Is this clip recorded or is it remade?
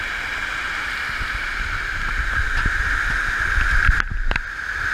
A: recorded